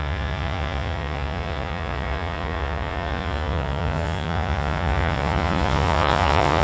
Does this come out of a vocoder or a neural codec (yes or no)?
yes